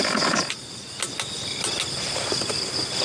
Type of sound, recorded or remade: recorded